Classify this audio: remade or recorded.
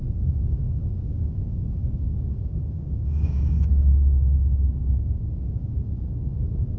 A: remade